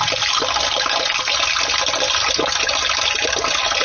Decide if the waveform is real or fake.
real